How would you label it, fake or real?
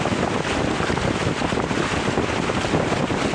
real